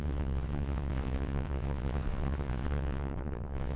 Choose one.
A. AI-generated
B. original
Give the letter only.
A